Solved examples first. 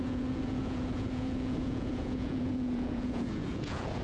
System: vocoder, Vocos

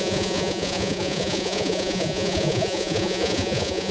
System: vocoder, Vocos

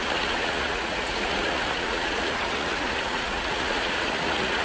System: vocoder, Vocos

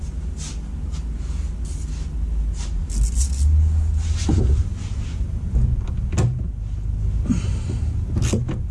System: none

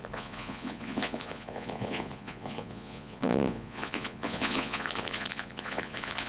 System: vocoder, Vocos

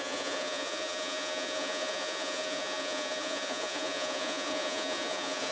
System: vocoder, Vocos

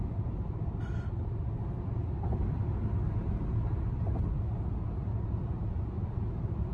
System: none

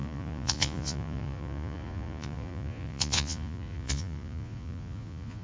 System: vocoder, Vocos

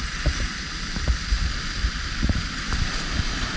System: none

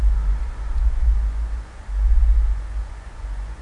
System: vocoder, Vocos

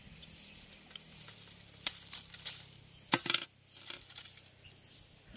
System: none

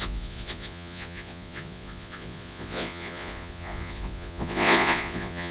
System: vocoder, Vocos